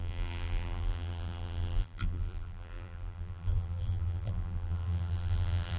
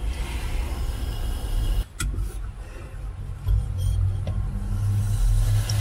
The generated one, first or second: first